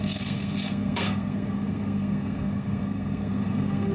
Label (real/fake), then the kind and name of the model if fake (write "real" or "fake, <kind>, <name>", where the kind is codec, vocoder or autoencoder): fake, codec, SNAC